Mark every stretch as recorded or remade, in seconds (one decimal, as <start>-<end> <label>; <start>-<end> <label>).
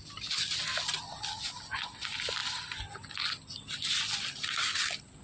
0.0-5.2 recorded